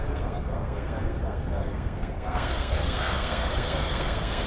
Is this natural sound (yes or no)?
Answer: no